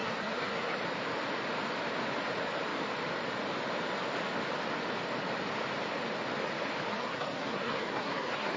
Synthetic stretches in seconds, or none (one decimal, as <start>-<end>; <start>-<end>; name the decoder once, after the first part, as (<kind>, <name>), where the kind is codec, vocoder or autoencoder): 0.0-0.8 (codec, SNAC); 6.9-8.6